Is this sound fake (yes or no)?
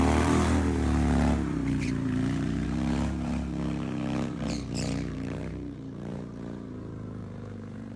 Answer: yes